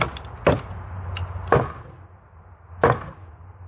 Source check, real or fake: real